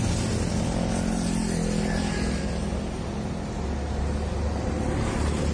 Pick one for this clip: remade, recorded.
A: recorded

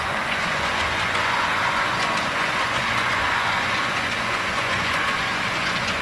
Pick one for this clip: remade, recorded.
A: remade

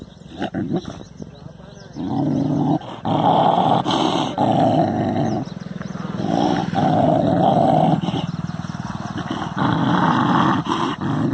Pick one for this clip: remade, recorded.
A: recorded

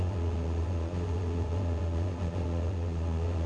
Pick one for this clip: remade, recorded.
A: remade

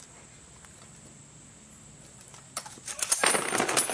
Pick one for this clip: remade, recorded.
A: recorded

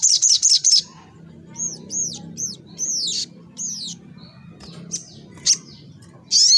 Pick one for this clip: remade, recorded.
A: recorded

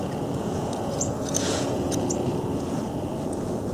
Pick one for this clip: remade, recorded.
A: remade